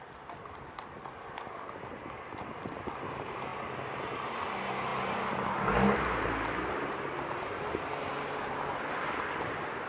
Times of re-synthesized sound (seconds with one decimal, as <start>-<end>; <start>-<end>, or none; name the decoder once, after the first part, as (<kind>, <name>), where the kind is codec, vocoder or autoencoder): none